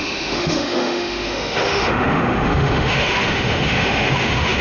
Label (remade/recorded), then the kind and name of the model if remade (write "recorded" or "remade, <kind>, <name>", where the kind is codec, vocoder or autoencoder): remade, autoencoder, DAC-VAE